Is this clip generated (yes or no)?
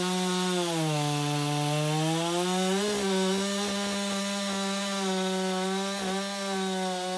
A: no